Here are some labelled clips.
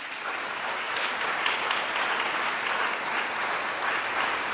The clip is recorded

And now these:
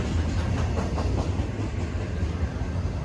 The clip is recorded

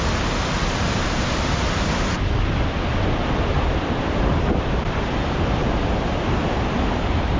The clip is remade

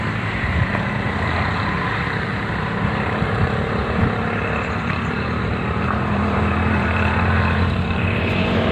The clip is remade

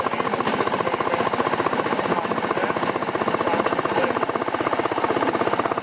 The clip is recorded